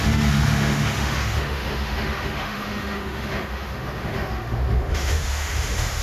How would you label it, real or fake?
fake